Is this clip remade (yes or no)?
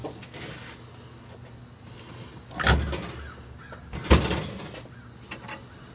no